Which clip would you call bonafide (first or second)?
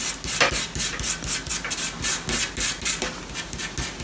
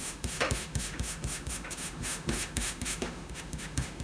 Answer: first